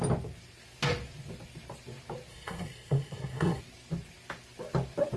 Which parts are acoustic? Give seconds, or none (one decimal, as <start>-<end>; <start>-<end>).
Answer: 0.0-2.3; 3.6-5.2